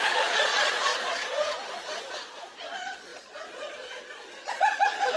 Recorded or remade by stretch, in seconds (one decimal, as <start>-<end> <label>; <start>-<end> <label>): 0.0-5.2 remade

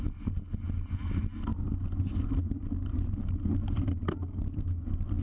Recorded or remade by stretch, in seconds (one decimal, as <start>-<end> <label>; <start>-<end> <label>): 0.0-5.2 recorded

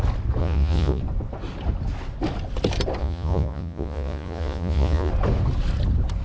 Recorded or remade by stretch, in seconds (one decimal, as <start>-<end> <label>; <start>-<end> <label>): 0.0-0.4 recorded; 0.4-1.0 remade; 1.0-3.0 recorded; 3.0-5.1 remade; 5.1-6.2 recorded